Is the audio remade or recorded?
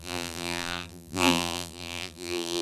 remade